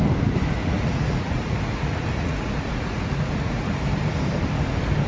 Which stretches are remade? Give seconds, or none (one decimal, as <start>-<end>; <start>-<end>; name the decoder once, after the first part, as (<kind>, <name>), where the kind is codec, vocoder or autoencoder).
0.6-3.7 (vocoder, Vocos)